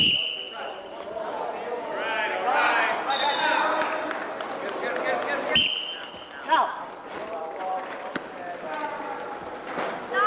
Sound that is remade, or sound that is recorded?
recorded